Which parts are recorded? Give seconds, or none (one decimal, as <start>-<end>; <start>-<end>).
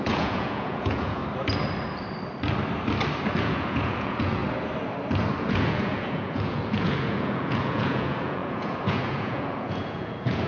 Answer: 1.2-3.4; 4.4-5.4